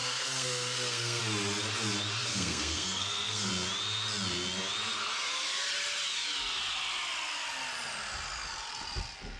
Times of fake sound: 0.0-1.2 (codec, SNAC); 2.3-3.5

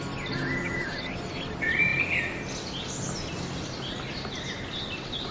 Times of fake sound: none

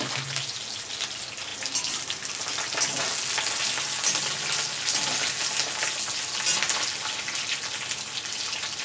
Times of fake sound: none

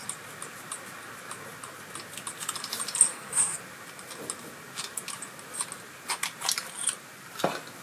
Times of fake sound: 3.1-3.6 (codec, SNAC)

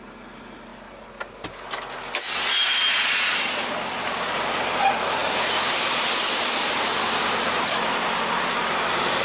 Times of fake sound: none

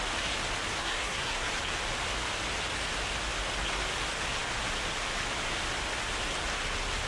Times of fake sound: 0.8-1.5 (codec, SNAC)